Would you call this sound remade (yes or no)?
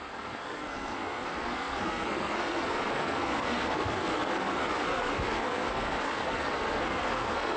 yes